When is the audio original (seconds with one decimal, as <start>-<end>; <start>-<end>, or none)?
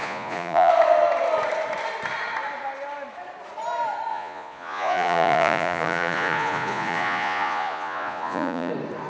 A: 0.7-4.1; 8.7-9.1